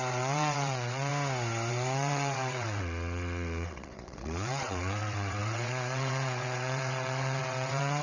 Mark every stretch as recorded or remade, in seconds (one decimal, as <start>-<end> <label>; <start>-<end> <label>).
0.0-1.1 remade; 1.1-1.7 recorded; 1.7-8.0 remade